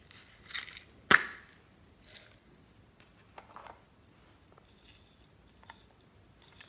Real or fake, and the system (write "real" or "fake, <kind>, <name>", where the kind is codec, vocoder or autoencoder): real